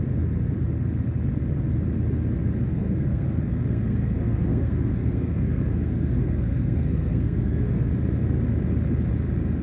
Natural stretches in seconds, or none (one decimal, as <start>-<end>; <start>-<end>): 0.0-2.7; 7.9-9.6